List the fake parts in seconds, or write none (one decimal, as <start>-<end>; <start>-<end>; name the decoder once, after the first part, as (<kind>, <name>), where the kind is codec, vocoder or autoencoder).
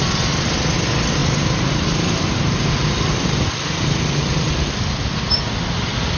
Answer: 1.2-4.5 (vocoder, BigVGAN v2)